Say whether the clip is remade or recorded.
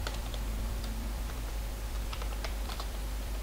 remade